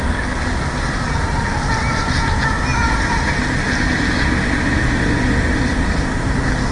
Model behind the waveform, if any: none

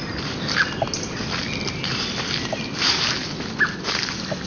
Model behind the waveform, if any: none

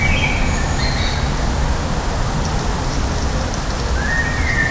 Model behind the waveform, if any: none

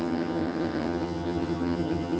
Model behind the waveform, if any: vocoder, HiFi-GAN